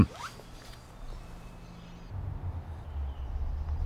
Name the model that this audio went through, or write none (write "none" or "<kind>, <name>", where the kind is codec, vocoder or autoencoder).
none